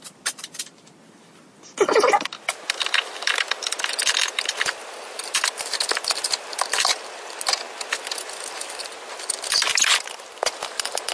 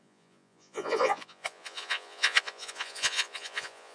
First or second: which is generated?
second